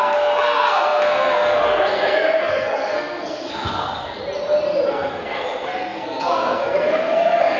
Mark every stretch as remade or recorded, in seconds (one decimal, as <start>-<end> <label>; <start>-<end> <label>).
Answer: 0.0-4.2 remade; 4.2-4.9 recorded; 4.9-7.6 remade

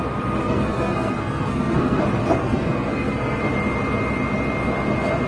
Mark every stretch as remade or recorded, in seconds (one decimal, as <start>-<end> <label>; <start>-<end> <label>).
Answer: 0.0-0.4 recorded; 0.4-2.0 remade; 2.0-2.4 recorded; 2.4-3.4 remade; 3.4-5.3 recorded

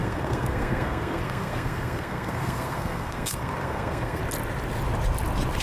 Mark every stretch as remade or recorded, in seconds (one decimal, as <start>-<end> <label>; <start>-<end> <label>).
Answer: 0.0-4.2 remade; 4.2-5.6 recorded

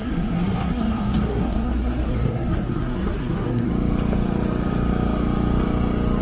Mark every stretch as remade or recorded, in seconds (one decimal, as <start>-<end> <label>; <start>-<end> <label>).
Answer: 0.0-3.7 remade; 3.7-6.2 recorded

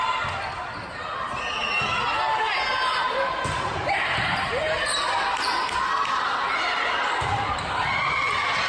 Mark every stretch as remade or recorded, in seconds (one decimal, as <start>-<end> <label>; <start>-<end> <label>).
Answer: 0.0-8.7 recorded

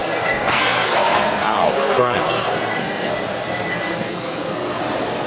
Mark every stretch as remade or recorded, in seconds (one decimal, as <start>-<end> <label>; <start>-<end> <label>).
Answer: 0.0-3.1 remade; 3.1-3.7 recorded; 3.7-4.8 remade; 4.8-5.3 recorded

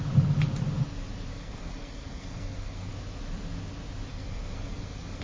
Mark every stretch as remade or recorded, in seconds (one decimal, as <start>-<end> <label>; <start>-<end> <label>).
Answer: 0.0-1.3 recorded; 1.3-2.9 remade; 2.9-4.1 recorded; 4.1-5.2 remade